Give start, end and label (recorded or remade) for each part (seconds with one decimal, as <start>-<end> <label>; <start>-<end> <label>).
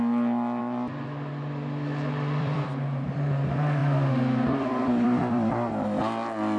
0.0-0.6 recorded; 0.6-3.1 remade; 3.1-3.8 recorded; 3.8-5.5 remade; 5.5-6.6 recorded